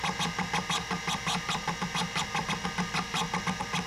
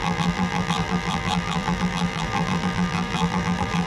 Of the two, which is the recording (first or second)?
first